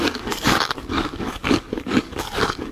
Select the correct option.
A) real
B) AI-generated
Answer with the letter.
B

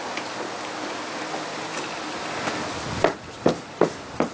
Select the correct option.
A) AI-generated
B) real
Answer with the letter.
B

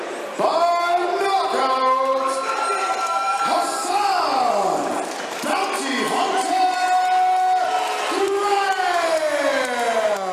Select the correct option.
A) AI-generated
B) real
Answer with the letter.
B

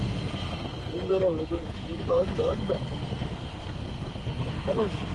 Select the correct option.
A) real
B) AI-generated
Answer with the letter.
B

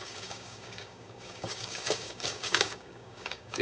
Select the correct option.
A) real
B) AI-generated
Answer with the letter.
B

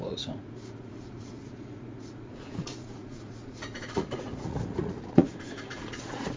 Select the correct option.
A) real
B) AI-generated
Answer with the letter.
B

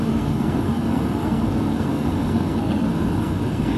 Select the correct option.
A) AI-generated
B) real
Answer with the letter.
A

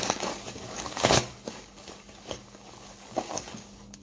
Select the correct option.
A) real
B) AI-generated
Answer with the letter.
B